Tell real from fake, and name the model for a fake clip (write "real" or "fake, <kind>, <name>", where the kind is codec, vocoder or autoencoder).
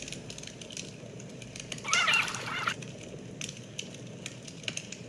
real